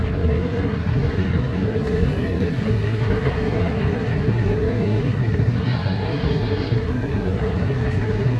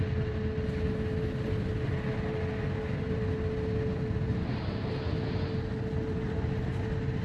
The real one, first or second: second